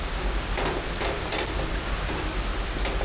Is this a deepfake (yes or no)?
no